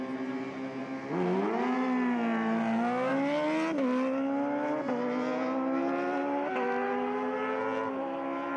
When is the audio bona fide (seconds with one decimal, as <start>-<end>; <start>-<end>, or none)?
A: 0.0-8.6